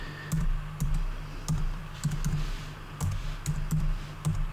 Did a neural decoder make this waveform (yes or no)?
no